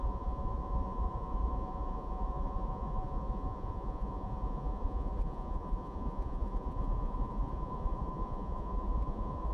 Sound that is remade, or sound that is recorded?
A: remade